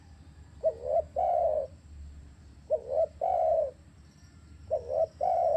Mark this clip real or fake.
fake